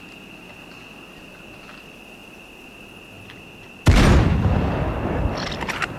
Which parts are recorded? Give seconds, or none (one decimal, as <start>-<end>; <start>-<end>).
0.0-6.0